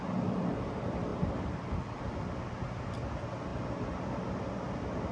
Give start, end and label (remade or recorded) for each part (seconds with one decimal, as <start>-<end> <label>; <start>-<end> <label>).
0.0-3.5 remade; 3.5-5.1 recorded